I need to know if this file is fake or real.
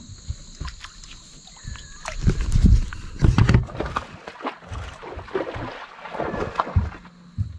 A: real